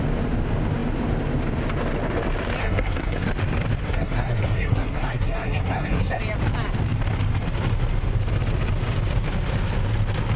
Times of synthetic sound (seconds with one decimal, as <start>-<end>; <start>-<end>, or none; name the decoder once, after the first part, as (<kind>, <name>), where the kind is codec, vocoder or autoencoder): 2.6-3.3 (codec, SNAC); 3.8-6.2